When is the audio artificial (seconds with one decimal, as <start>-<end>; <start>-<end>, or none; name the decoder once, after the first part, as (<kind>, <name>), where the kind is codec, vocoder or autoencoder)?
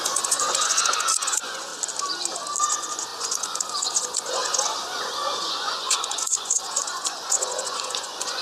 0.0-1.7 (vocoder, Vocos); 2.6-8.4